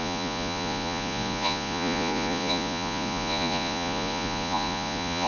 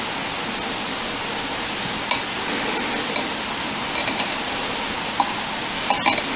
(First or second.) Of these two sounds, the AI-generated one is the first